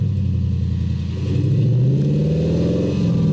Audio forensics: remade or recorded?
recorded